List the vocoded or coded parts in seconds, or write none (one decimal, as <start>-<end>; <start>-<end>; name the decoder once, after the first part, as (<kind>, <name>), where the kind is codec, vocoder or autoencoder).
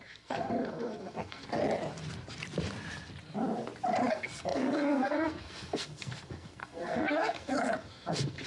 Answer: 0.0-1.6 (codec, SNAC); 4.1-8.5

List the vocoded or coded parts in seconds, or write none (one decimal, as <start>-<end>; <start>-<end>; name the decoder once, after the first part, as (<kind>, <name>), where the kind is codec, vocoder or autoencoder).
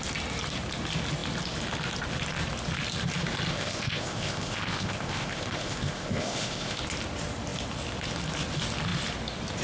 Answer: 3.5-6.8 (codec, ZipCodec)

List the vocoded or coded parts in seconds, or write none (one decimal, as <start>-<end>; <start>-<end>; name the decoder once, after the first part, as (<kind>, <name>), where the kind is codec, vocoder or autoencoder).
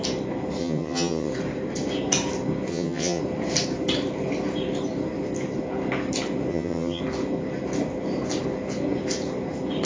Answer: 0.6-1.3 (vocoder, HiFi-GAN); 2.7-3.2; 6.5-7.0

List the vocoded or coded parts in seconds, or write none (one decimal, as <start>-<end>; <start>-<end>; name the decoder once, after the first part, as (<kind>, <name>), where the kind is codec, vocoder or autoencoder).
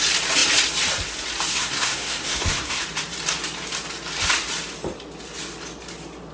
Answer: 1.5-2.8 (codec, SNAC)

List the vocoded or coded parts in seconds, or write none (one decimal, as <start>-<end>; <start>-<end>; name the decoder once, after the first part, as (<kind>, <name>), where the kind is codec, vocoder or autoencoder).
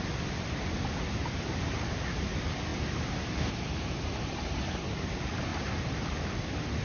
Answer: 5.5-6.2 (vocoder, BigVGAN v2)